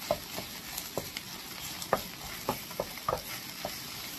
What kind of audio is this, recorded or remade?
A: recorded